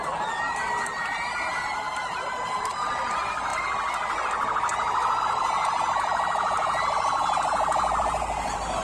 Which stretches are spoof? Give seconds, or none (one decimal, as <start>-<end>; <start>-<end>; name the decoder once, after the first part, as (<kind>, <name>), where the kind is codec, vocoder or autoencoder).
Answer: 0.0-3.5 (vocoder, BigVGAN v2); 5.2-7.2; 8.0-8.8

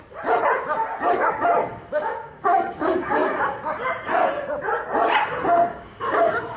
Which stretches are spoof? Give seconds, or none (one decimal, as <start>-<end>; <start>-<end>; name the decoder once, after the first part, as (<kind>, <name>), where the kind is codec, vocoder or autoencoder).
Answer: 1.6-3.6 (codec, DAC); 5.7-6.6

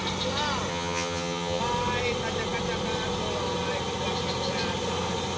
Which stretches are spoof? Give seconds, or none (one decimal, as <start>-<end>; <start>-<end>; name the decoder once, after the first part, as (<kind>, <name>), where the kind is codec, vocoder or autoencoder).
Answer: 0.7-1.6 (vocoder, HiFi-GAN)

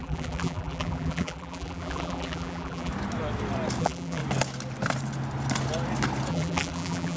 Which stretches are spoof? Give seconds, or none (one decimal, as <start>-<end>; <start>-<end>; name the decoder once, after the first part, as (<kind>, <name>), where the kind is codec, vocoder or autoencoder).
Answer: 0.0-2.9 (vocoder, BigVGAN v2); 3.8-4.2; 6.3-7.2

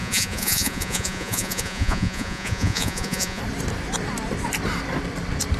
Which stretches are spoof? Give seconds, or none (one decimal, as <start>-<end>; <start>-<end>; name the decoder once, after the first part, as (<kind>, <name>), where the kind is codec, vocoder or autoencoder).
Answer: 0.0-3.4 (vocoder, Vocos)

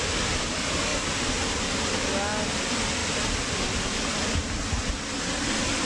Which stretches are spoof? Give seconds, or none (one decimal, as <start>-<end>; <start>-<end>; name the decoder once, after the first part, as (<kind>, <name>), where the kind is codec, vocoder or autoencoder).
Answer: none